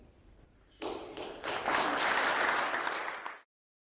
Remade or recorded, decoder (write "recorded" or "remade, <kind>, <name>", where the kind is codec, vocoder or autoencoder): recorded